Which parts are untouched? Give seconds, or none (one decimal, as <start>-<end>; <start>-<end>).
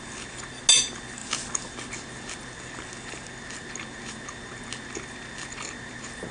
0.0-6.3